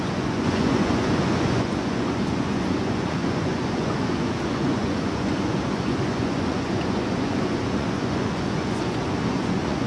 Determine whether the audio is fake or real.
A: fake